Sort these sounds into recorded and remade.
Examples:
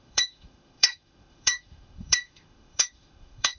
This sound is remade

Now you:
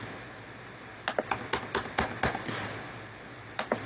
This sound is recorded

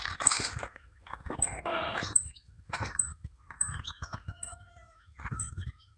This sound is remade